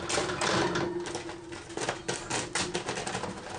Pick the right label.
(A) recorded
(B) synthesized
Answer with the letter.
A